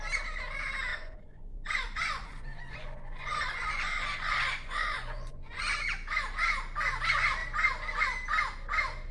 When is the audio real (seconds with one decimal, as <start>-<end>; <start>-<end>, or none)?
0.0-0.9; 5.6-9.1